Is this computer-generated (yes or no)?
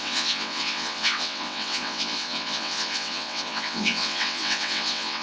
yes